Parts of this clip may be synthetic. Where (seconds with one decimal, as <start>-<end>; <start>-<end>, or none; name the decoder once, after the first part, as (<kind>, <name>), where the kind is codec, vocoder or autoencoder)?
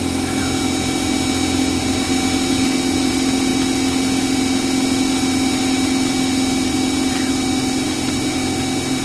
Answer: none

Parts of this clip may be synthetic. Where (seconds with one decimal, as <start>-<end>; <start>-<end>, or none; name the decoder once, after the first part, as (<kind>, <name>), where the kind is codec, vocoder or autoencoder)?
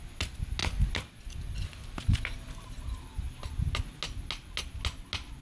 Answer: none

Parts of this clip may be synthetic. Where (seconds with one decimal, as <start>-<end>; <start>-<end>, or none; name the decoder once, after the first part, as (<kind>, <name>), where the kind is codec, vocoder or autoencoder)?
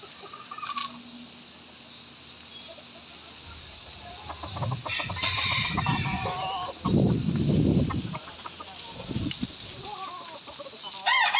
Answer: none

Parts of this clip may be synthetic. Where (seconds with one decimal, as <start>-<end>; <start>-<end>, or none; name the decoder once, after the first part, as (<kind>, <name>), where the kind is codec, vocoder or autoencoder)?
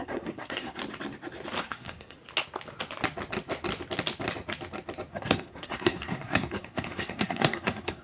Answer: 0.0-0.8 (codec, SNAC); 1.6-2.2; 5.1-8.0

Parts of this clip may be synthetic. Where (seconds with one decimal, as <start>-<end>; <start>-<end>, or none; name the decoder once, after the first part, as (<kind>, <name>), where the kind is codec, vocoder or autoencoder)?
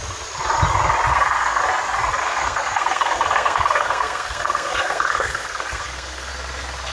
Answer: 1.1-1.6 (codec, SNAC); 2.2-6.3